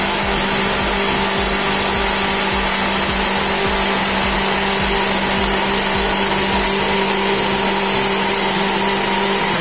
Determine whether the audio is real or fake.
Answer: real